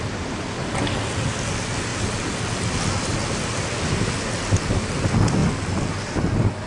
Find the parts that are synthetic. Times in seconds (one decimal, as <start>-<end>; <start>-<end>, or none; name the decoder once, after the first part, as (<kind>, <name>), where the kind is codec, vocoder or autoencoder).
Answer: none